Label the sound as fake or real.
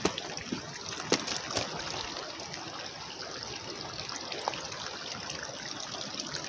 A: real